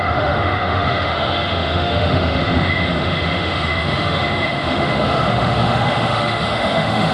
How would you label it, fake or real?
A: fake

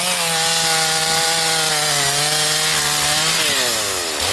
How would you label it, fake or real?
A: real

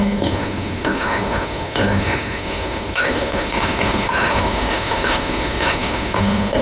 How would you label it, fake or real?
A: fake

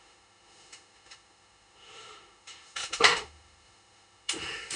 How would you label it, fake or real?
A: fake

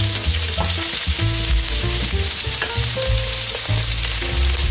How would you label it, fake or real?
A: real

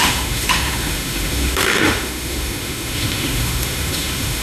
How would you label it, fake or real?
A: fake